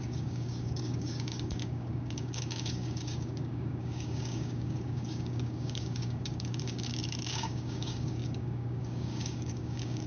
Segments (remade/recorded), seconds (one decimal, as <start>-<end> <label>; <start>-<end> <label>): 0.0-10.1 remade